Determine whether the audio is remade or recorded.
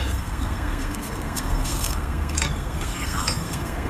remade